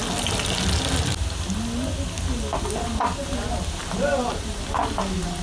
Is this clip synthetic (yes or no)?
no